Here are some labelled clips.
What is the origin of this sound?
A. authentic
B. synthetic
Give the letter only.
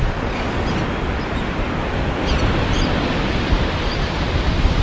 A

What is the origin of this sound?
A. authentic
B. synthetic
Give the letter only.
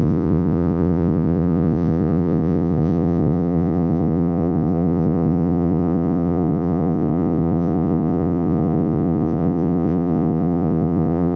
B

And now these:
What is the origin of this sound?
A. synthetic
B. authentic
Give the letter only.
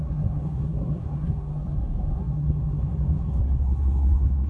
A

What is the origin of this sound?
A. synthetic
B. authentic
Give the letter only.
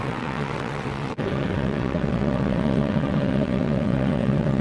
A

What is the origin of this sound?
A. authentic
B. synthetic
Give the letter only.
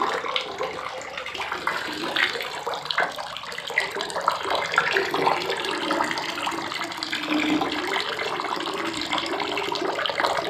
A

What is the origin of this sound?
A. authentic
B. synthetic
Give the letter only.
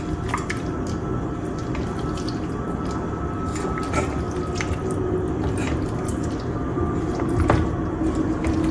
A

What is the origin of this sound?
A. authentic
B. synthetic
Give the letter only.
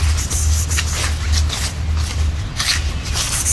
A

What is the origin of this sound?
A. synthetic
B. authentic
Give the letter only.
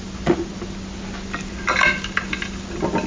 B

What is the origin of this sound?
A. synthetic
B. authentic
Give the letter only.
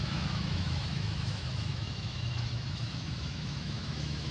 A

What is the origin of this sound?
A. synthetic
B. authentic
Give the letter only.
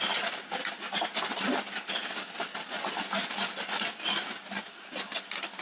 B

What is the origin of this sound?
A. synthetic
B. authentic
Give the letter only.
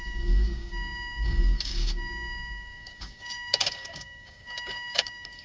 A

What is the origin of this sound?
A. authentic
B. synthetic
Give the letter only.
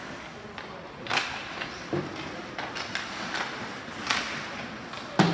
A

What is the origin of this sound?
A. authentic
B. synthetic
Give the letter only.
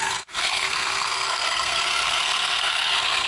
B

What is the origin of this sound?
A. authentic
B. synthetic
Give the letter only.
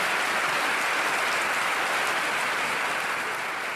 A